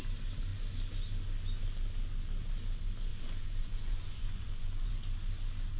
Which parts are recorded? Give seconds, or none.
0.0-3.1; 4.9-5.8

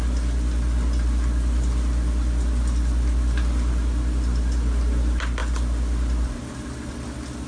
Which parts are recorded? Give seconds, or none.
0.0-7.5

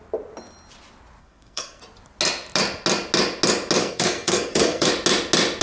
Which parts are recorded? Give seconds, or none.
0.0-1.2; 1.8-3.8; 4.9-5.6

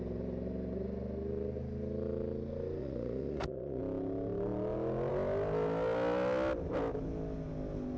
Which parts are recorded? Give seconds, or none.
0.0-2.8; 3.8-8.0

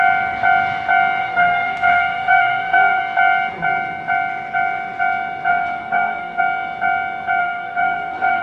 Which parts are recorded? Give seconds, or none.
0.0-1.2; 3.0-5.5; 6.4-7.4

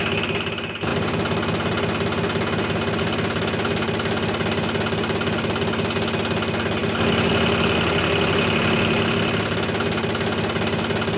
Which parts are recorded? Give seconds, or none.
0.0-11.2

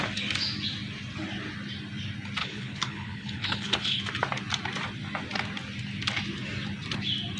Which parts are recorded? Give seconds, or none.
0.0-2.4; 4.0-7.4